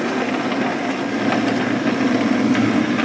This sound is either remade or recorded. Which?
recorded